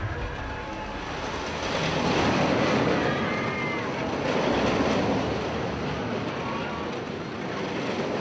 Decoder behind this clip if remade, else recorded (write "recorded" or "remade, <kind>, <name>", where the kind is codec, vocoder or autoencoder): recorded